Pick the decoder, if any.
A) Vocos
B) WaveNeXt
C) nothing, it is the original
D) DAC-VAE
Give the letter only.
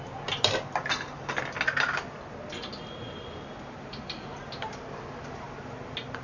C